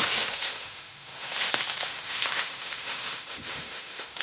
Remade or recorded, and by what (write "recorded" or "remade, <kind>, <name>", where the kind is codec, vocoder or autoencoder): remade, autoencoder, DAC-VAE